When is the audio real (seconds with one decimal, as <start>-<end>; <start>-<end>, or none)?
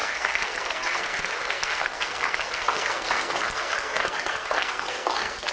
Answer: none